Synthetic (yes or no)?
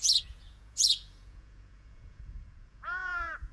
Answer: yes